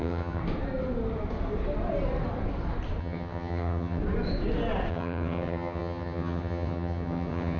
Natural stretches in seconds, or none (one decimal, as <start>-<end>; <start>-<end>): 0.4-3.0; 4.0-4.9